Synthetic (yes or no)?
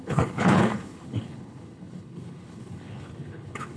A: yes